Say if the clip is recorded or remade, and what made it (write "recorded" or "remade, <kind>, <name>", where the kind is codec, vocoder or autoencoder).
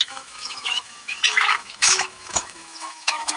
remade, autoencoder, DAC-VAE